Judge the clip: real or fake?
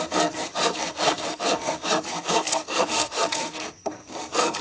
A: fake